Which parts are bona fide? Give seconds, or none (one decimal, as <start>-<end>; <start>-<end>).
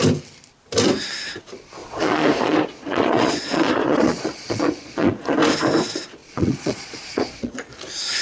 0.0-1.8; 5.4-6.2; 7.7-8.2